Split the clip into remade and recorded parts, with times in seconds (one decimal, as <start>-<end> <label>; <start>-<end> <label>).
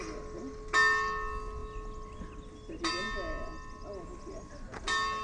0.0-5.2 recorded